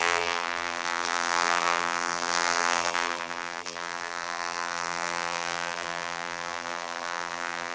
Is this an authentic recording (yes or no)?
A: no